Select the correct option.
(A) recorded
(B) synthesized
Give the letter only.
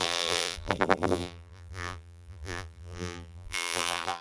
B